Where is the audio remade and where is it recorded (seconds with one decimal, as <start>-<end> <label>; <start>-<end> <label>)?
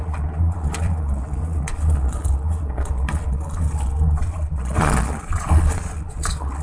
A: 0.0-6.6 remade